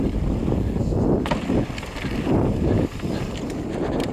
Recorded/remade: recorded